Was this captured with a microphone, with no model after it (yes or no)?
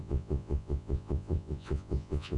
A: no